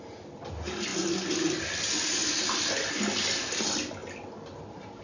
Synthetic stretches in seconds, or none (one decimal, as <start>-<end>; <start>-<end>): none